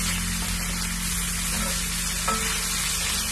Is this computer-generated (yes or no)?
no